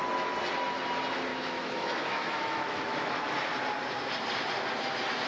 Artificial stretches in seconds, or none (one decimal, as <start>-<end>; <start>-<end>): 1.3-3.2